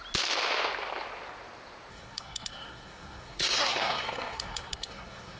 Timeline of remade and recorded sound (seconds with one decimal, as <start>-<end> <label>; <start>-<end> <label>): 0.0-1.9 recorded; 1.9-5.4 remade